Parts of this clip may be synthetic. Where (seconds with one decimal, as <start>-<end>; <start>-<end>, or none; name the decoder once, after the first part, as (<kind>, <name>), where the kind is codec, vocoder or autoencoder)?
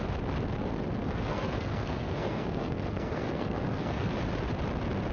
1.0-4.1 (codec, SNAC)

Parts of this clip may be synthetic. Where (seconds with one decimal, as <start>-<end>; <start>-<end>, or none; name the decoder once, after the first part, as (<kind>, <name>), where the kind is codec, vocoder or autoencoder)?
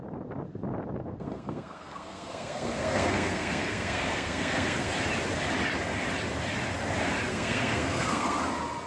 1.0-4.9 (codec, SNAC); 7.3-8.4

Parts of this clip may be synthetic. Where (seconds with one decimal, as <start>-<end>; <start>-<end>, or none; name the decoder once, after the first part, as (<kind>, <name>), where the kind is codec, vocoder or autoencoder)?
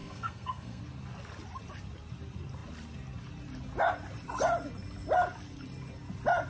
0.0-0.8 (codec, SNAC)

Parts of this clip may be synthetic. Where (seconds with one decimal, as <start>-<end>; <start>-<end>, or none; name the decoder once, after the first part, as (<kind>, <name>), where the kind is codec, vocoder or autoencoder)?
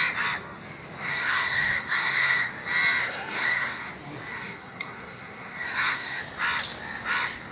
1.0-2.5 (codec, SNAC); 3.0-3.9; 4.3-6.2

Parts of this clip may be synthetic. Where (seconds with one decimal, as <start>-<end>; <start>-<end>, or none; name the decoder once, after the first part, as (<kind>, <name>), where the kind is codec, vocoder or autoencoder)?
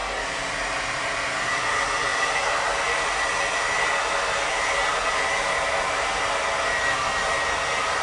none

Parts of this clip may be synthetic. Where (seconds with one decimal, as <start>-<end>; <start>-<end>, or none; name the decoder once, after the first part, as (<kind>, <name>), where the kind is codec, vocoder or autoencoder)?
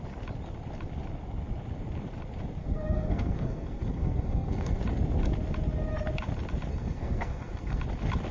2.6-4.8 (codec, SNAC); 6.7-7.8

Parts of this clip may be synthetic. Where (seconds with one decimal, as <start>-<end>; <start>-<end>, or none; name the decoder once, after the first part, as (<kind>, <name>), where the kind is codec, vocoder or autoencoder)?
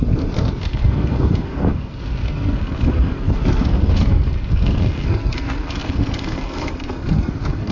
0.0-7.7 (codec, SNAC)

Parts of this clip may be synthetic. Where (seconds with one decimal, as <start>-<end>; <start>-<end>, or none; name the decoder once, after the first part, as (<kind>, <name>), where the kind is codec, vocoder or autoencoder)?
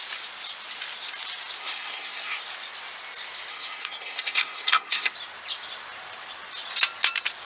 1.6-2.4 (codec, SNAC); 3.5-5.1